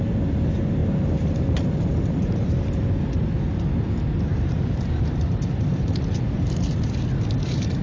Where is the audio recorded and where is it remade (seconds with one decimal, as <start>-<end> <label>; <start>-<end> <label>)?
0.0-0.8 recorded; 0.8-2.8 remade; 2.8-4.3 recorded; 4.3-7.8 remade